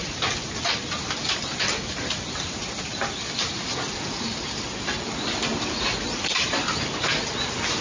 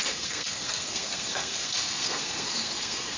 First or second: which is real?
first